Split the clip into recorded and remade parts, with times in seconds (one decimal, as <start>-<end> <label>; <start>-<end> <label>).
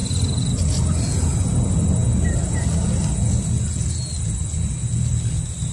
0.0-5.7 recorded